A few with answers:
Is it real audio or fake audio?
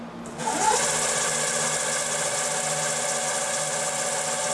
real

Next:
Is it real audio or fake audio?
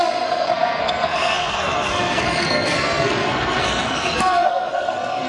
fake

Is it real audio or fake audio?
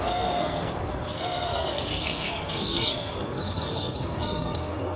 fake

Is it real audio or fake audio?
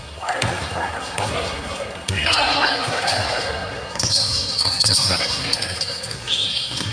fake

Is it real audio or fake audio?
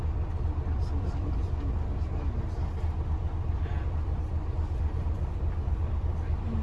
real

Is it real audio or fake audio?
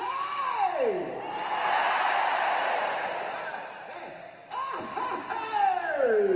real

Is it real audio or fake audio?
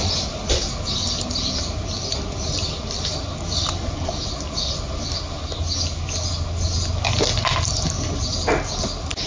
real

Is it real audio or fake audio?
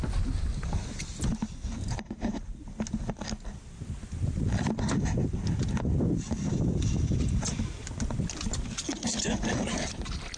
real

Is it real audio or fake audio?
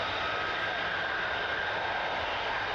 real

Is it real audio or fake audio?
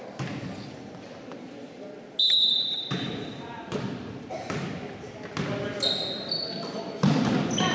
real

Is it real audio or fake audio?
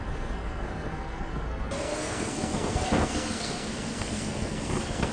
fake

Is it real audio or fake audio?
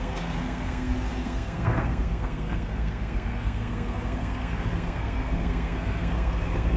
fake